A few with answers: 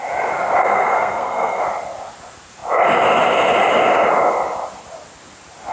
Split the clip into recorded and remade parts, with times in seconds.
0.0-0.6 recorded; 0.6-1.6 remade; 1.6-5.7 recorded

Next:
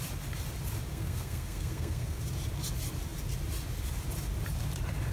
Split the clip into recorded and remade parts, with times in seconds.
0.0-0.9 recorded; 0.9-2.2 remade; 2.2-5.1 recorded

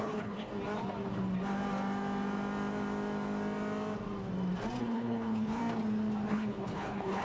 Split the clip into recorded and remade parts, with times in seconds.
0.0-0.5 remade; 0.5-4.8 recorded; 4.8-5.6 remade; 5.6-6.3 recorded; 6.3-7.2 remade

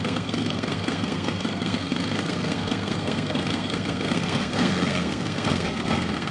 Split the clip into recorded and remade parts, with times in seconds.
0.0-6.3 remade

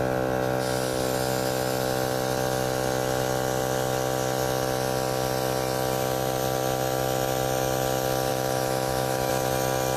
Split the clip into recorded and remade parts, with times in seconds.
0.0-8.3 recorded; 8.3-9.3 remade; 9.3-10.0 recorded